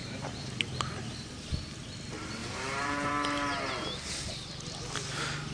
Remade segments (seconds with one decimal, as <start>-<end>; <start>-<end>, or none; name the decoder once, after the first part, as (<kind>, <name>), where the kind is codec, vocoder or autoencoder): 0.0-0.6 (vocoder, BigVGAN v2); 2.4-3.1